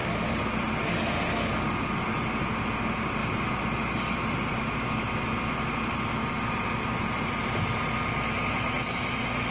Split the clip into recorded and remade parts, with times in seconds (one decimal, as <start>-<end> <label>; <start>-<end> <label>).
0.0-9.5 recorded